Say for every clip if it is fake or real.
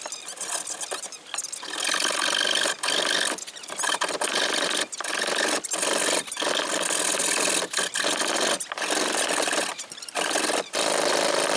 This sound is real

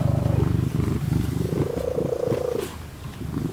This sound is fake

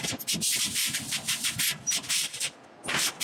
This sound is real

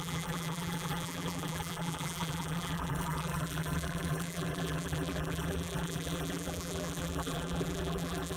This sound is fake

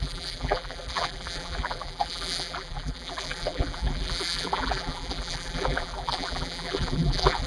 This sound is fake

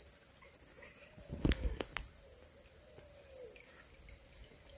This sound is real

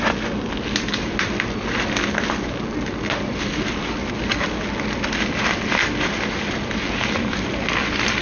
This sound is real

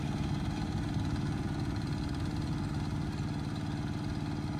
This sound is real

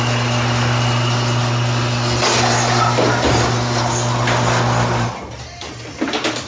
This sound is real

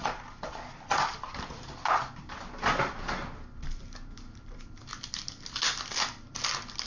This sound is real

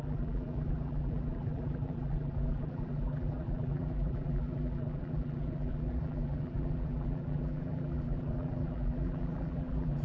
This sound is fake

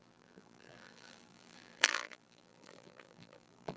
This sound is fake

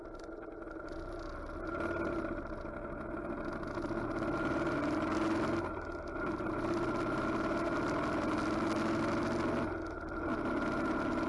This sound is real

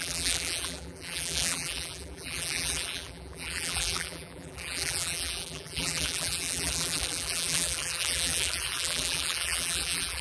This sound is fake